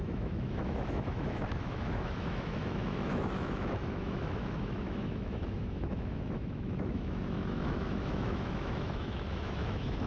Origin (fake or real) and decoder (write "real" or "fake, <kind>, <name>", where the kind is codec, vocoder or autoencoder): fake, autoencoder, DAC-VAE